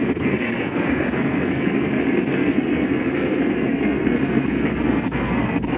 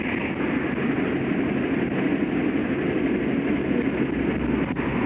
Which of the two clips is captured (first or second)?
second